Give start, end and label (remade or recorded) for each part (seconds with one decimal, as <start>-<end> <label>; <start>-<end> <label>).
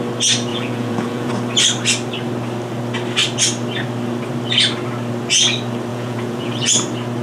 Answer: 0.0-0.5 recorded; 0.5-1.3 remade; 1.3-5.9 recorded; 5.9-6.5 remade; 6.5-7.2 recorded